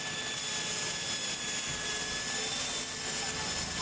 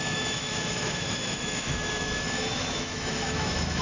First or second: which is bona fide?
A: first